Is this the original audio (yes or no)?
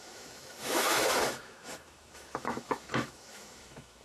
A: no